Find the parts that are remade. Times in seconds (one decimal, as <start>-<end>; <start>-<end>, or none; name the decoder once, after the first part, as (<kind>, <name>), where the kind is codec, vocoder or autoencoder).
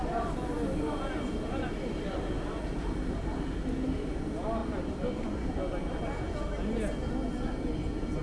none